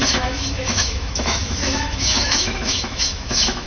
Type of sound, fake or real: fake